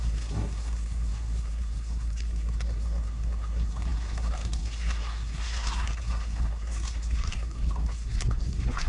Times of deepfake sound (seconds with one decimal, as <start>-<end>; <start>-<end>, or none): 0.0-8.9